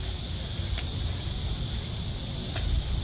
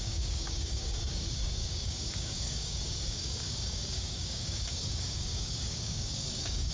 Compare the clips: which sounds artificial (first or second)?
second